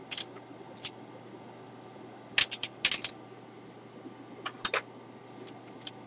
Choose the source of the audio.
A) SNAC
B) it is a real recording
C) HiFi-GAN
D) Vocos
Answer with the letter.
B